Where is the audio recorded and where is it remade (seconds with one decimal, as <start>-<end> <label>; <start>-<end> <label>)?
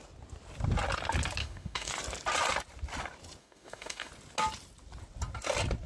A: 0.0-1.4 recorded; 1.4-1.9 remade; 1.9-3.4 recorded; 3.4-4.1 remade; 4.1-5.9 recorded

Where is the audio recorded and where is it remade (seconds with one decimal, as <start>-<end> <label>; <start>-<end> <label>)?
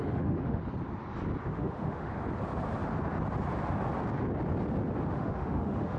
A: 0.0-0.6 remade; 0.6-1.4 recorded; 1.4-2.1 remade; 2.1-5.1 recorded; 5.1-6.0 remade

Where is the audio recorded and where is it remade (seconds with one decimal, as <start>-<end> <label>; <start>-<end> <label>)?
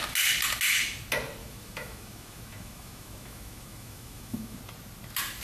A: 0.0-1.4 recorded; 1.4-4.6 remade; 4.6-5.4 recorded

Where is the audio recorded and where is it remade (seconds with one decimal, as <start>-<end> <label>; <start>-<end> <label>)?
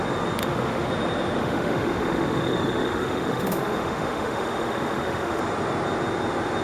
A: 0.0-0.4 recorded; 0.4-0.9 remade; 0.9-1.4 recorded; 1.4-5.4 remade; 5.4-6.6 recorded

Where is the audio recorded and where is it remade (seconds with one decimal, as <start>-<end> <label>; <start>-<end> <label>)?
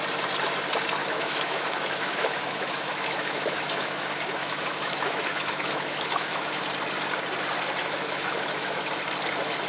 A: 0.0-1.0 recorded; 1.0-4.0 remade; 4.0-4.4 recorded; 4.4-6.6 remade; 6.6-7.8 recorded; 7.8-8.9 remade; 8.9-9.7 recorded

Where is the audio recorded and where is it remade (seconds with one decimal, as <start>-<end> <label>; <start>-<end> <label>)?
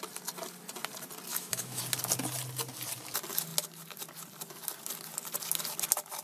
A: 0.0-1.3 recorded; 1.3-1.8 remade; 1.8-6.2 recorded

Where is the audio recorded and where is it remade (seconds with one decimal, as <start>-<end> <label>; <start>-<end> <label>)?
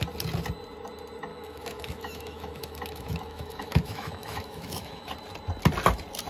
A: 0.0-1.3 recorded; 1.3-5.1 remade; 5.1-6.3 recorded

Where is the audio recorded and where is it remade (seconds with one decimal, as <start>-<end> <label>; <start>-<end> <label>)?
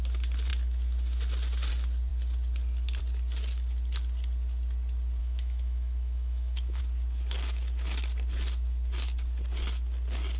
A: 0.0-5.2 recorded; 5.2-6.8 remade; 6.8-10.4 recorded